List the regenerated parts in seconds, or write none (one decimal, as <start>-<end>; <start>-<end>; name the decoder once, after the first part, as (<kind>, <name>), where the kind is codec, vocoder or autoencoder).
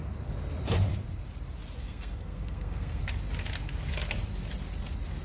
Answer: 1.8-3.0 (codec, SNAC)